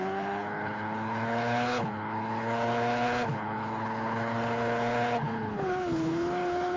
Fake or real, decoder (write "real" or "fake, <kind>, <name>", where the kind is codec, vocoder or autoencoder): fake, codec, HILCodec